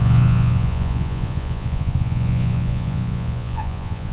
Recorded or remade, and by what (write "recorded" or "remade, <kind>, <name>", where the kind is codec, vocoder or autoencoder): remade, vocoder, Vocos